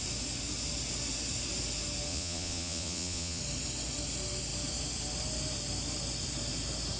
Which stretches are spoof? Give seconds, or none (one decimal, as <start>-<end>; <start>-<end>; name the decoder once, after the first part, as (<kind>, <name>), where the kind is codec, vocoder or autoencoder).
2.1-3.4 (vocoder, Vocos)